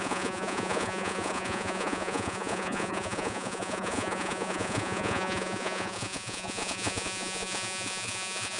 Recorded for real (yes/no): no